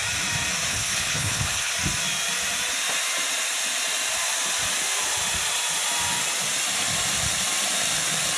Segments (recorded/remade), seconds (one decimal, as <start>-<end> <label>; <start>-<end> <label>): 0.0-0.7 recorded; 0.7-1.7 remade; 1.7-8.4 recorded